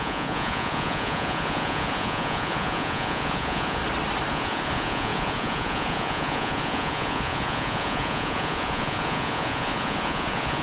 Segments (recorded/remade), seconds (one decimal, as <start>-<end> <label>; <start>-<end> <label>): 0.0-3.8 remade; 3.8-4.3 recorded; 4.3-10.6 remade